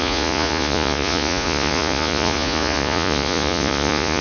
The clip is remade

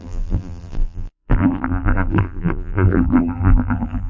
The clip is remade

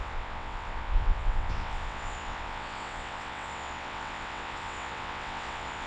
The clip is remade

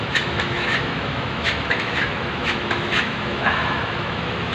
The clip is remade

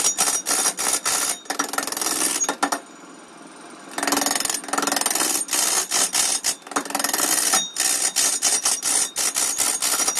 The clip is recorded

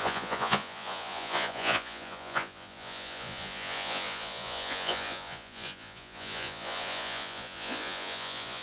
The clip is remade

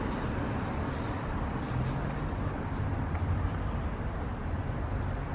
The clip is recorded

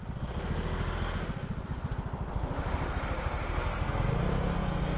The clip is recorded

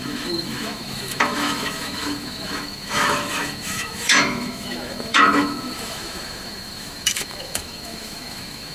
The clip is remade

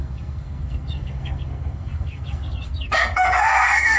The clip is remade